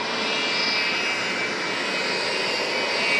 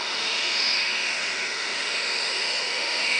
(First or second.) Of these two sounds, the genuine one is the first